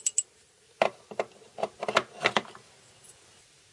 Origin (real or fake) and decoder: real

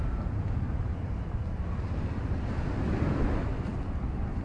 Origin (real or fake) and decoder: real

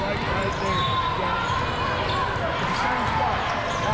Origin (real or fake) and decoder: real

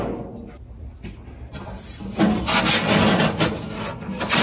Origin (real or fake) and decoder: real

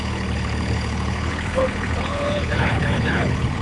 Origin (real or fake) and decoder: fake, codec, HILCodec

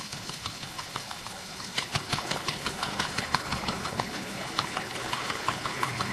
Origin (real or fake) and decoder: fake, codec, HILCodec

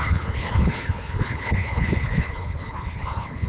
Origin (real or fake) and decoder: fake, codec, HILCodec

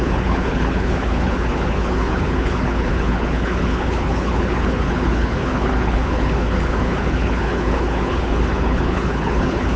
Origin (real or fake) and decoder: fake, codec, HILCodec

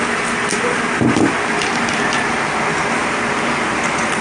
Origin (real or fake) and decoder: real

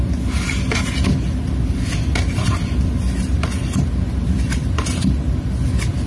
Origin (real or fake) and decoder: real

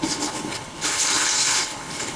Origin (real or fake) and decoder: fake, codec, HILCodec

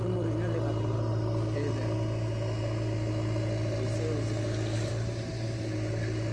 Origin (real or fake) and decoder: real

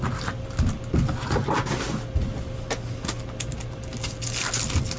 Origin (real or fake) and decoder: real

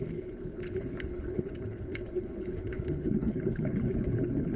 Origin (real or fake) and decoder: fake, codec, HILCodec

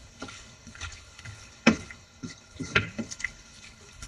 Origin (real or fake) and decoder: fake, codec, HILCodec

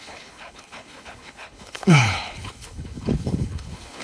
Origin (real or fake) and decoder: fake, codec, HILCodec